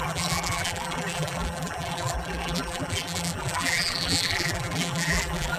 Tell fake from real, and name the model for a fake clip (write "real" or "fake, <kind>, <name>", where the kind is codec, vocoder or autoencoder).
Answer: fake, vocoder, BigVGAN v2